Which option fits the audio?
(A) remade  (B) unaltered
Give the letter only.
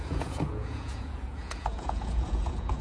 A